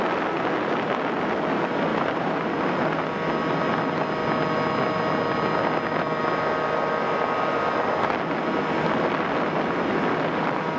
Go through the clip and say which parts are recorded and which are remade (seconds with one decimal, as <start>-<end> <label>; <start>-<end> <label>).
0.0-1.9 recorded; 1.9-2.5 remade; 2.5-10.8 recorded